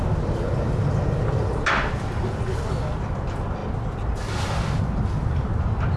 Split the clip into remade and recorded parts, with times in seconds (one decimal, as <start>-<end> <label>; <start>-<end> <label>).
0.0-6.0 recorded